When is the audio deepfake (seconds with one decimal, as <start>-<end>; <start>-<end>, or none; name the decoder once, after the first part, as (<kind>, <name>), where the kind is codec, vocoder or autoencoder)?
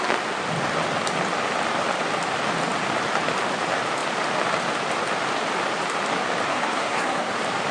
6.5-7.3 (codec, SNAC)